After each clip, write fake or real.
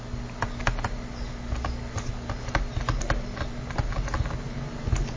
real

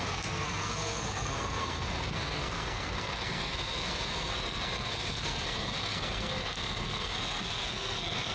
fake